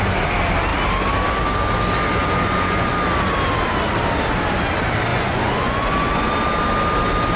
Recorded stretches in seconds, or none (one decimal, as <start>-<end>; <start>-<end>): 0.0-2.2; 2.9-5.1; 6.3-7.4